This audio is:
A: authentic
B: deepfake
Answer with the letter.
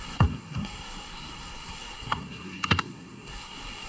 B